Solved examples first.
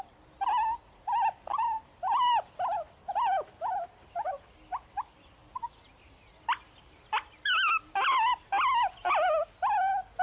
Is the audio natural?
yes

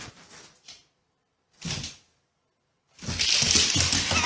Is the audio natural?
yes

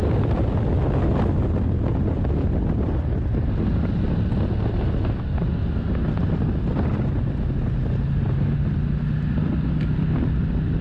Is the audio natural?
yes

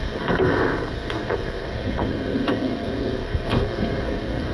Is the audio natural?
no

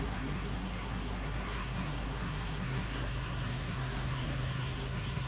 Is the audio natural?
no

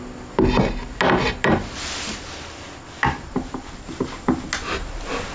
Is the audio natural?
yes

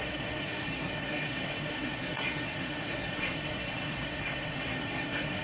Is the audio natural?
no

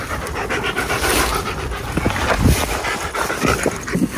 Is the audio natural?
yes